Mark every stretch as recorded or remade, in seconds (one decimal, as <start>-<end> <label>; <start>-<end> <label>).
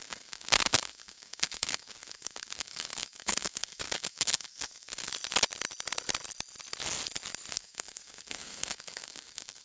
0.0-5.1 remade; 5.1-7.5 recorded; 7.5-9.6 remade